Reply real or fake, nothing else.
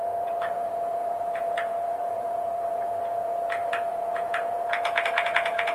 fake